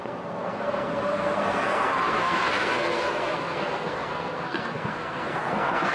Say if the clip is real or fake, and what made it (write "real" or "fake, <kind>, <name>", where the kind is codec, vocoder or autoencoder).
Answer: fake, codec, SNAC